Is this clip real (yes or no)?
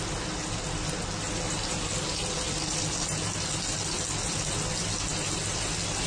yes